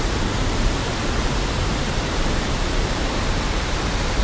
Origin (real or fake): fake